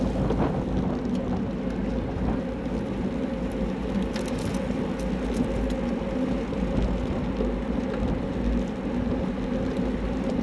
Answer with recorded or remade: recorded